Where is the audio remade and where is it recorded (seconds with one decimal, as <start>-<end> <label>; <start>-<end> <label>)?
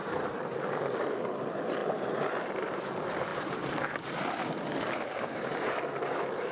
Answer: 0.0-0.6 remade; 0.6-1.8 recorded; 1.8-2.8 remade; 2.8-3.3 recorded; 3.3-5.8 remade; 5.8-6.5 recorded